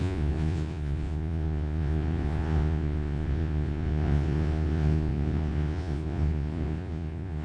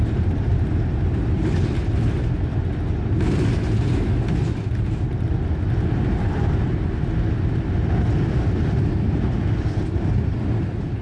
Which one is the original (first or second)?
second